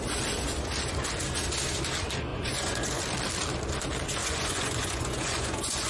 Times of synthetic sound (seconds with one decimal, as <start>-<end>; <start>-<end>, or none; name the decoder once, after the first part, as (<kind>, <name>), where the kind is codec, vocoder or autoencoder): 2.3-3.0 (vocoder, Vocos); 4.2-5.9